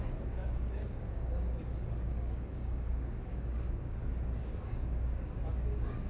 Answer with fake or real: fake